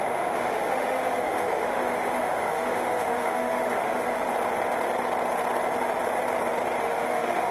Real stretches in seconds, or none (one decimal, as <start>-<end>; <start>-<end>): 4.3-6.8